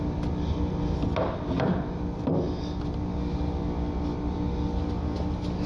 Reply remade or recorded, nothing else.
recorded